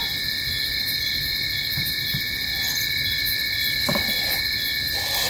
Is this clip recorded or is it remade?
recorded